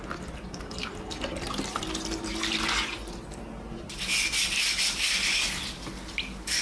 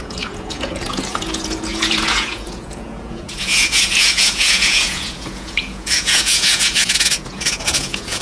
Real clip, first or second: first